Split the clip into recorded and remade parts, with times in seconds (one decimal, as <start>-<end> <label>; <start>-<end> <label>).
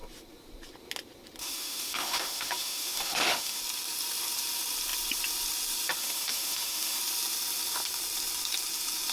0.0-1.4 recorded; 1.4-3.6 remade; 3.6-6.0 recorded; 6.0-7.0 remade; 7.0-9.1 recorded